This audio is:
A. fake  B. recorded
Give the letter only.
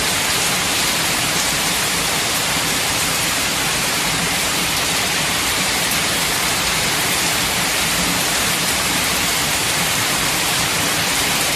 A